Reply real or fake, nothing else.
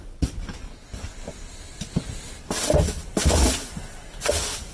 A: real